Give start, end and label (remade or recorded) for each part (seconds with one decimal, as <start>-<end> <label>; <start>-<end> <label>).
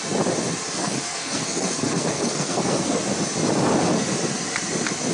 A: 0.0-0.8 recorded; 0.8-3.0 remade; 3.0-5.1 recorded